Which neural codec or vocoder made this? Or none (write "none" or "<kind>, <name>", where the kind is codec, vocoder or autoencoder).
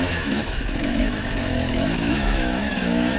autoencoder, DAC-VAE